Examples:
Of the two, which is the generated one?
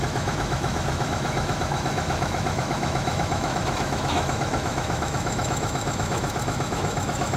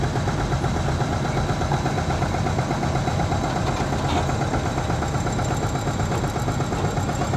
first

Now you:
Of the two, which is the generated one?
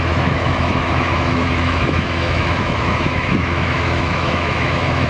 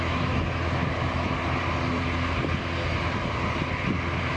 first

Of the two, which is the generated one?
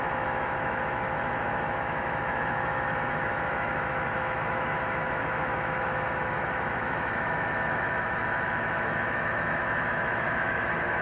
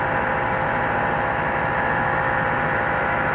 first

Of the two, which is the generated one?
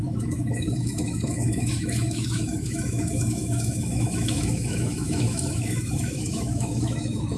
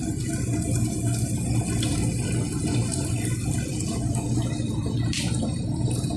first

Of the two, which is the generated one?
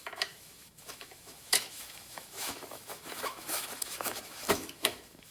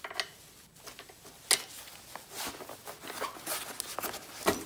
first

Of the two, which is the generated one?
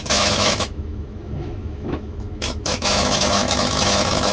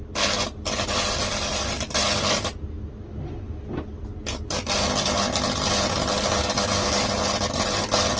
first